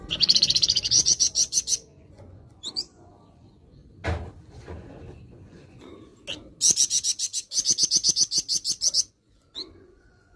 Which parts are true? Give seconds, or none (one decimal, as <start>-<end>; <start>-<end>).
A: 3.8-4.4; 6.1-9.1